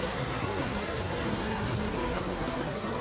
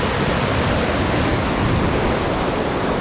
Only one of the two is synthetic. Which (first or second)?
first